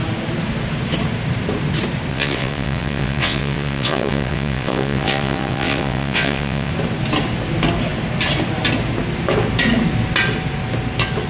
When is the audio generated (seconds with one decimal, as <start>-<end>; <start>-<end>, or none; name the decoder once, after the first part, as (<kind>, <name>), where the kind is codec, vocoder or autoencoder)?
2.1-6.7 (vocoder, WaveNeXt)